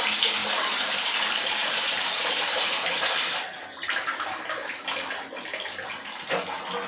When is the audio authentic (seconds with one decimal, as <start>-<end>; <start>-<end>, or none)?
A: 0.0-0.4; 3.4-6.9

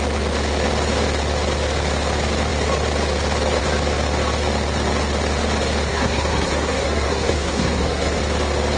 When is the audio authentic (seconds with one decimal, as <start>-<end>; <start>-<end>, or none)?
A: 0.0-5.9; 8.2-8.8

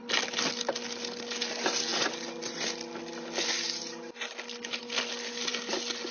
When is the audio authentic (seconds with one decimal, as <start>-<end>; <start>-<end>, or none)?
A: 0.0-6.1

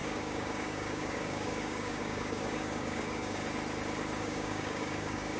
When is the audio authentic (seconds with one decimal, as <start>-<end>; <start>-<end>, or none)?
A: 3.4-4.2

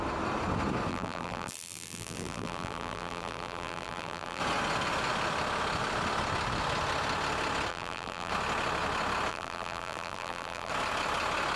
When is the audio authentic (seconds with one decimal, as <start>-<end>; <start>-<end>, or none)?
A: 0.0-0.9; 4.4-7.7; 8.3-9.3; 10.7-11.6